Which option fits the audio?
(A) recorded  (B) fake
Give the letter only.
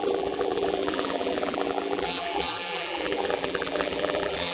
B